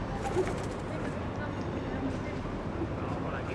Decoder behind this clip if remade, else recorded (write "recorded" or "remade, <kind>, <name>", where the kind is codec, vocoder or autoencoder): remade, vocoder, BigVGAN v2